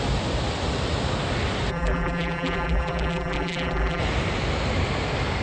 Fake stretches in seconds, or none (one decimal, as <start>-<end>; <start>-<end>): 1.7-4.0